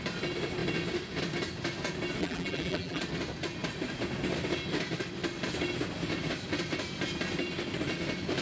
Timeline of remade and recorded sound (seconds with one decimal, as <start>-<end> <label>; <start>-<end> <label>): 0.0-2.2 recorded; 2.2-3.0 remade; 3.0-8.4 recorded